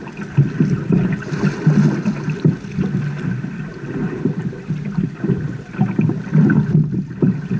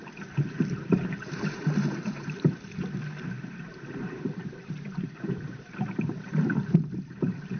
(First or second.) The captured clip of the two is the first